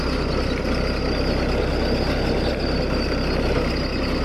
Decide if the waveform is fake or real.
real